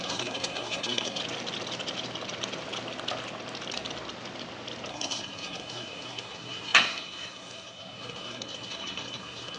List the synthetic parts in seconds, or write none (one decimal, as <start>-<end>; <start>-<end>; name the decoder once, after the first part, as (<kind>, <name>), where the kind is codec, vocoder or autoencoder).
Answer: 0.0-1.2 (codec, SNAC); 4.9-9.6